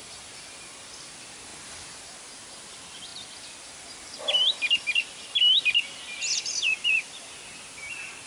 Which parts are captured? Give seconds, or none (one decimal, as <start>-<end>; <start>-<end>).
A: 0.0-8.3